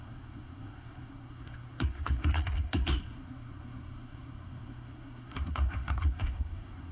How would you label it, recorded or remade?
remade